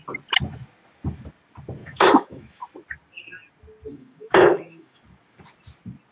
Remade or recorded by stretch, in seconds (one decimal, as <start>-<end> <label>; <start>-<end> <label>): 0.0-1.8 recorded; 1.8-2.6 remade; 2.6-3.9 recorded; 3.9-5.0 remade; 5.0-6.1 recorded